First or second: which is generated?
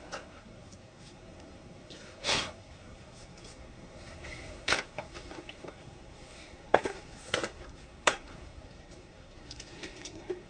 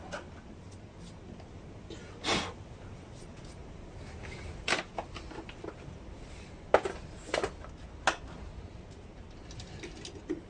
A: first